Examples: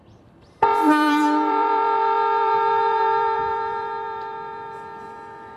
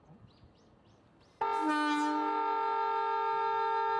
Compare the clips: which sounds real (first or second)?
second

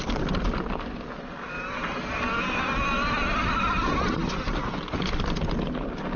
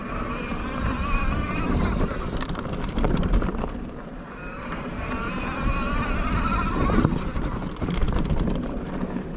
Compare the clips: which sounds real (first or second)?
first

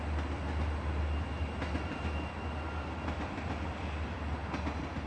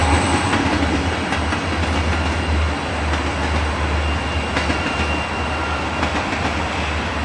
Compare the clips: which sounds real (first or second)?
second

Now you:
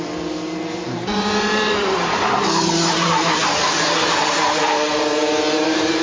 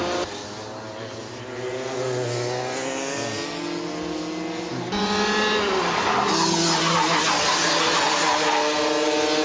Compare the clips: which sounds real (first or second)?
second